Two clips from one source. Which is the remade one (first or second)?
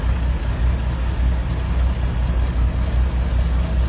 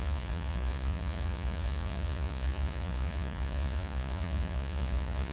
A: second